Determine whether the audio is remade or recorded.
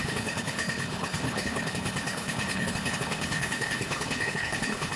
remade